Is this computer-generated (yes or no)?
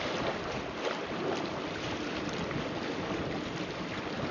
no